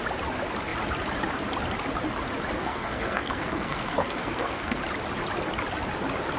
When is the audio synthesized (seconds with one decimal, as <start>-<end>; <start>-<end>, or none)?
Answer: 2.6-4.8